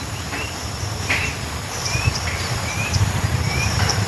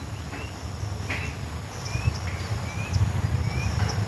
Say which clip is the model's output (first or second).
first